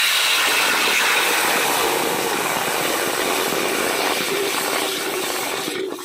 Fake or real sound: real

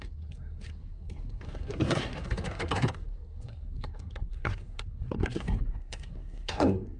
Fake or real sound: fake